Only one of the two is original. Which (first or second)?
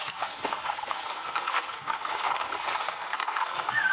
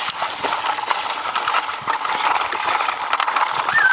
second